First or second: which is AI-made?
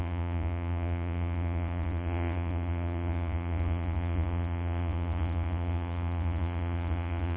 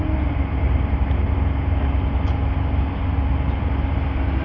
first